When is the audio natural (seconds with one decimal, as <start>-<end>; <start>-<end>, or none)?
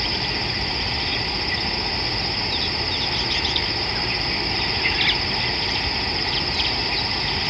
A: 0.0-7.5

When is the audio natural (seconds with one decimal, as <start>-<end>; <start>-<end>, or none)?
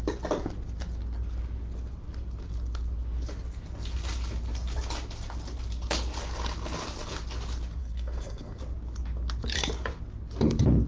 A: 0.0-7.8; 8.6-10.9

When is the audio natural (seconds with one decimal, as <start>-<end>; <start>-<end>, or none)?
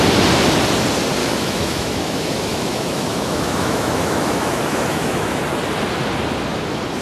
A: 0.0-1.2; 5.4-7.0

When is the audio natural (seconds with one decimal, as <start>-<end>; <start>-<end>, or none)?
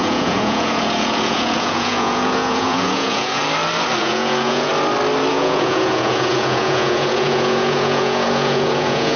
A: 3.4-4.0; 4.7-5.3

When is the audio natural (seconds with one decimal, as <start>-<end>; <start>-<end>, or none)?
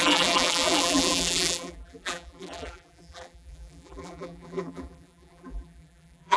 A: none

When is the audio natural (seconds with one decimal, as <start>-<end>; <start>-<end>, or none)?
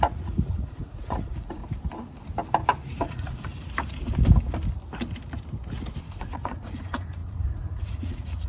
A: 1.6-3.0; 3.5-6.2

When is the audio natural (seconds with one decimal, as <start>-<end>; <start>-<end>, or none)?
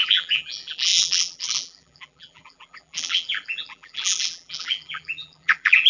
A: none